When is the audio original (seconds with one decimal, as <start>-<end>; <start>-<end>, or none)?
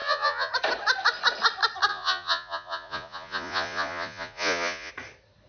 0.5-1.9; 4.9-5.5